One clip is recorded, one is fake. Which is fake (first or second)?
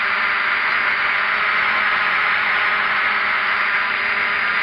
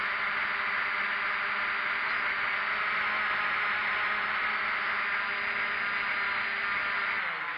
first